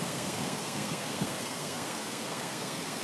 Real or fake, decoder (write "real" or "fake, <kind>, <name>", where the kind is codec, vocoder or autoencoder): fake, codec, SNAC